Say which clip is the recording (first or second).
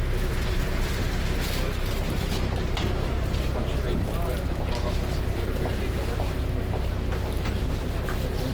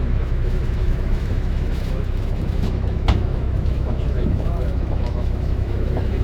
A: first